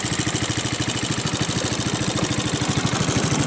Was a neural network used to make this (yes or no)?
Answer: no